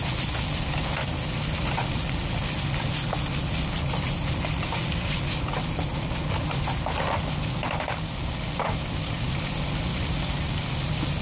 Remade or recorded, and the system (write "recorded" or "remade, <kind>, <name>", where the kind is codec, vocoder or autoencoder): recorded